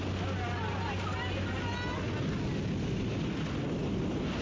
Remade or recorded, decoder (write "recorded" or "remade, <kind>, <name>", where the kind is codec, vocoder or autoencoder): recorded